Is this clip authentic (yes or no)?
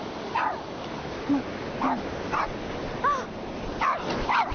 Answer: yes